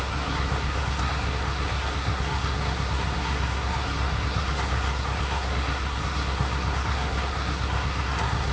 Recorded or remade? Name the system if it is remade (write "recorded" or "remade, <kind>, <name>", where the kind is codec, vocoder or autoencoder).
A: remade, codec, SNAC